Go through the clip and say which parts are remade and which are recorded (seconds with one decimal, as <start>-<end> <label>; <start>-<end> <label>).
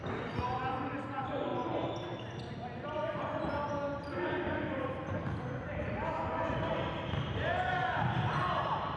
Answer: 0.0-9.0 recorded